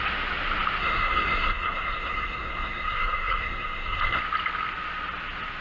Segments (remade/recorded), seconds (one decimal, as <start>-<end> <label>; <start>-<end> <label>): 0.0-0.8 recorded; 0.8-4.2 remade; 4.2-5.6 recorded

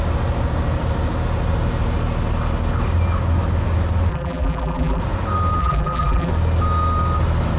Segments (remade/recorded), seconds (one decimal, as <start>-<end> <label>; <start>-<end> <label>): 0.0-4.1 recorded; 4.1-5.0 remade; 5.0-5.6 recorded; 5.6-6.3 remade; 6.3-7.6 recorded

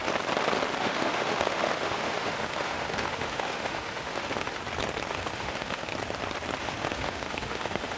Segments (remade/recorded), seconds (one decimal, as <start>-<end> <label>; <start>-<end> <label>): 0.0-0.8 recorded; 0.8-4.6 remade; 4.6-5.1 recorded; 5.1-5.9 remade; 5.9-6.6 recorded; 6.6-8.0 remade

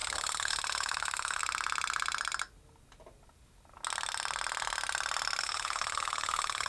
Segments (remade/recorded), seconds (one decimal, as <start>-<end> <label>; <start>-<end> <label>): 0.0-1.4 remade; 1.4-5.4 recorded; 5.4-6.7 remade

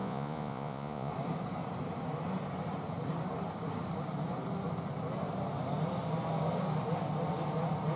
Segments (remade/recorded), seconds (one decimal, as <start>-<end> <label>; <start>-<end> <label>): 0.0-1.1 remade; 1.1-8.0 recorded

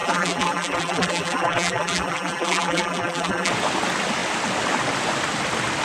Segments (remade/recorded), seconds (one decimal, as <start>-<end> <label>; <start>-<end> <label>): 0.0-3.5 remade; 3.5-5.8 recorded